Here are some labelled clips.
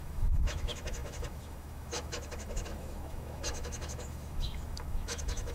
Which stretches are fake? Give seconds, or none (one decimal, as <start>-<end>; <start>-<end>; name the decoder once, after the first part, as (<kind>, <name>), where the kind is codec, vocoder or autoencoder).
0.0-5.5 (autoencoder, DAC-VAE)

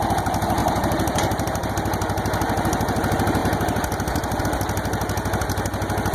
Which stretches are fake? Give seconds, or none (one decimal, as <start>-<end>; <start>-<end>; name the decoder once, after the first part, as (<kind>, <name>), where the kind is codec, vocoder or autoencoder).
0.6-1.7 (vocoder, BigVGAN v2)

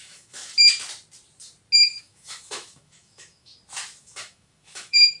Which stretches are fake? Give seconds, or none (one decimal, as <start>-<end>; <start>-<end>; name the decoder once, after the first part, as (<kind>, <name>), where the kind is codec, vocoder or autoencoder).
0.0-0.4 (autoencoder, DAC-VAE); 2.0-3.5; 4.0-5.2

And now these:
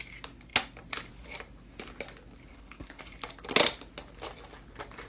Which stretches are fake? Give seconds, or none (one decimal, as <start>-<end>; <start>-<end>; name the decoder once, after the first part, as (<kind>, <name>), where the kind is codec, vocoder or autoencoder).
2.5-3.0 (codec, HILCodec)

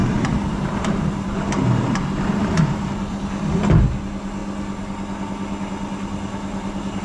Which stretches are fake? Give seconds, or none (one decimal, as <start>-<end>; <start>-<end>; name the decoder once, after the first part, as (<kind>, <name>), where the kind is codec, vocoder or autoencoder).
0.0-3.6 (vocoder, BigVGAN v2)